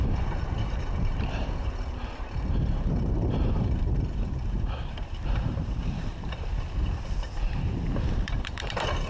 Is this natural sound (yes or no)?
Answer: no